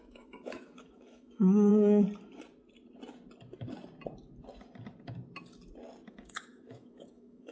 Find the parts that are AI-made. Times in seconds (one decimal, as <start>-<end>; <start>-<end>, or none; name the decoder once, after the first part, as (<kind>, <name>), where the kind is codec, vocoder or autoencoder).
0.0-1.7 (autoencoder, DAC-VAE); 6.1-7.5